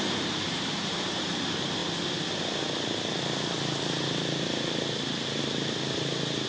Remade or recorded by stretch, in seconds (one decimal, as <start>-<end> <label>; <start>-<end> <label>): 0.0-1.8 remade; 1.8-5.4 recorded; 5.4-6.5 remade